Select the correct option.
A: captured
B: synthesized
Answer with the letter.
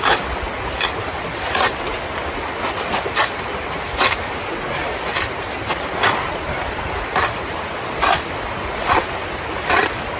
A